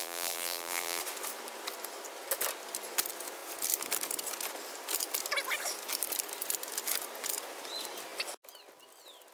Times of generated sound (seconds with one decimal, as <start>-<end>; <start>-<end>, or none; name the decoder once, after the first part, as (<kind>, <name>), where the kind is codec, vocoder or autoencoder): 0.0-1.0 (vocoder, BigVGAN v2)